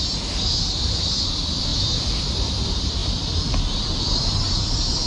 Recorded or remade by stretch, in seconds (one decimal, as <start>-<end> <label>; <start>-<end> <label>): 0.0-5.1 remade